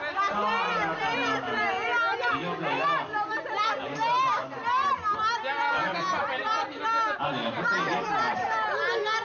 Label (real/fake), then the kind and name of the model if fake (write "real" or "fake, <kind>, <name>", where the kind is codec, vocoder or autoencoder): real